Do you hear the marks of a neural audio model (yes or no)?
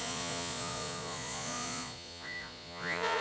yes